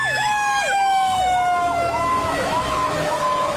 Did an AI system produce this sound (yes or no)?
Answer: yes